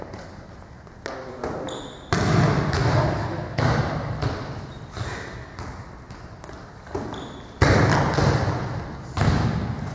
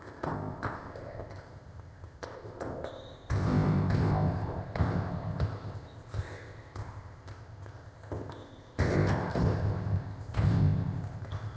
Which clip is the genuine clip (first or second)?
first